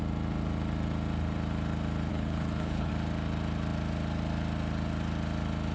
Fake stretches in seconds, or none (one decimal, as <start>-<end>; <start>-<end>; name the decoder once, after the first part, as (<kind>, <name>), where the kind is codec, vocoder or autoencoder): 2.1-2.9 (codec, HILCodec)